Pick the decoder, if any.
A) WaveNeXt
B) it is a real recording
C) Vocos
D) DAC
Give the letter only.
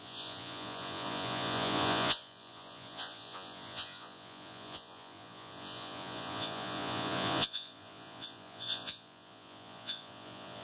C